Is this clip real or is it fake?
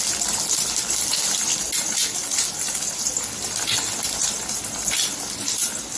real